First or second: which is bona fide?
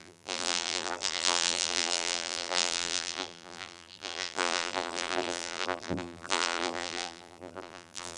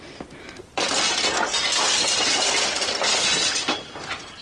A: second